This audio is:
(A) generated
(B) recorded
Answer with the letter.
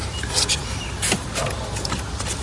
B